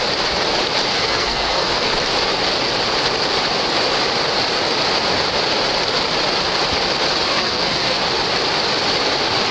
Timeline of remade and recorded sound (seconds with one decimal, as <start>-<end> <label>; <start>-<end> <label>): 0.0-0.9 recorded; 0.9-1.9 remade; 1.9-7.3 recorded; 7.3-8.0 remade; 8.0-9.5 recorded